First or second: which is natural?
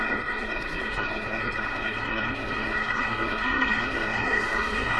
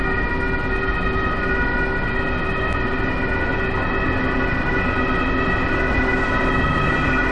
second